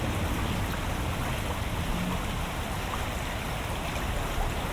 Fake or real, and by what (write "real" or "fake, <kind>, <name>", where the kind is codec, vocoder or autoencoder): real